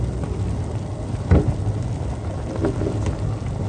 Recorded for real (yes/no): yes